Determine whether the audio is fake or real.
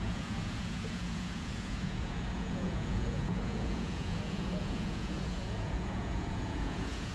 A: fake